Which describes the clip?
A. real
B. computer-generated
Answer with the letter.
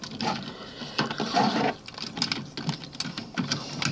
A